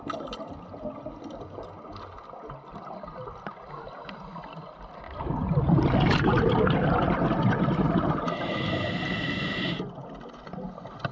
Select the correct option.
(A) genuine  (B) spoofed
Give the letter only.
A